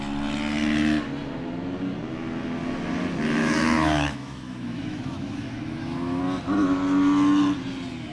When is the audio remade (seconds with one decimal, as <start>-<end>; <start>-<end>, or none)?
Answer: 3.4-6.2